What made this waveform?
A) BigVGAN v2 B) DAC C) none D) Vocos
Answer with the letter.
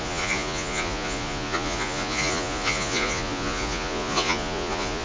D